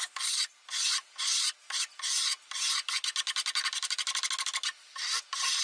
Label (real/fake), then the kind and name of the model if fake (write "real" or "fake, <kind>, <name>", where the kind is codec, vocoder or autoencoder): real